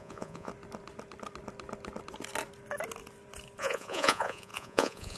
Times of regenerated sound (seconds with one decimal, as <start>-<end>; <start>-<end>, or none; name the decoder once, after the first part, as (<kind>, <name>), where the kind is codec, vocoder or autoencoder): 0.0-0.5 (vocoder, Vocos); 3.6-5.2